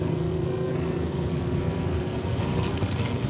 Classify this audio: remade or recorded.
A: remade